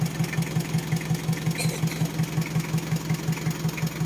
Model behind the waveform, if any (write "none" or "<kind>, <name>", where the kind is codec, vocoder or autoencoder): none